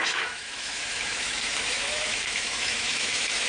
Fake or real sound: fake